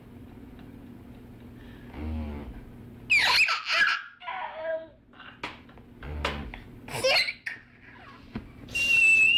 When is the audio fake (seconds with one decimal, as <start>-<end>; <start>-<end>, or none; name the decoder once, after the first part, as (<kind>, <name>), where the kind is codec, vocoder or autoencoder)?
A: none